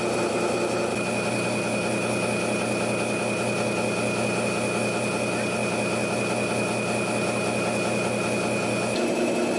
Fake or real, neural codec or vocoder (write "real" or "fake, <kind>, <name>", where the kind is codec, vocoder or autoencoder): real